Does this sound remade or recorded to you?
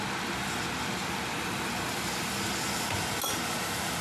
recorded